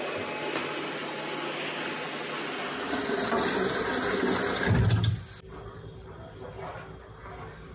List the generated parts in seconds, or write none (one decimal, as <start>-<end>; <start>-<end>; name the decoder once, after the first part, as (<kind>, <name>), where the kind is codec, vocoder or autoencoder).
none